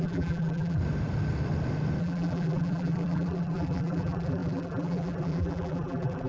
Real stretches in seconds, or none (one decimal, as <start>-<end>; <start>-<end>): 0.8-2.0